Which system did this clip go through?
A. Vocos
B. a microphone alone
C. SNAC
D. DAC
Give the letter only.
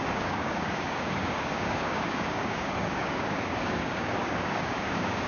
D